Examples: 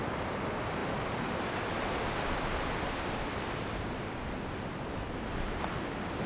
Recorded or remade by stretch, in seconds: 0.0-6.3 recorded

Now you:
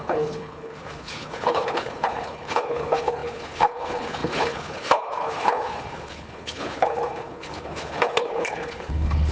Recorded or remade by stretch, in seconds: 0.0-9.3 remade

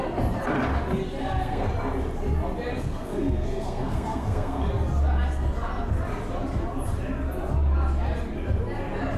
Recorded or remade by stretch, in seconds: 0.0-1.2 recorded; 1.2-1.7 remade; 1.7-2.7 recorded; 2.7-4.7 remade; 4.7-9.2 recorded

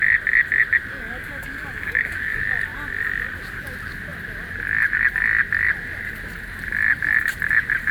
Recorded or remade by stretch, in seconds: 0.0-0.9 recorded; 0.9-2.4 remade; 2.4-7.9 recorded